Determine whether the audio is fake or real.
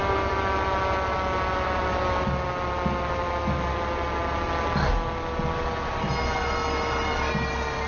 real